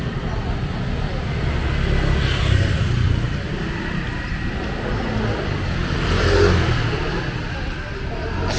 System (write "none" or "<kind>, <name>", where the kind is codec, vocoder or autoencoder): none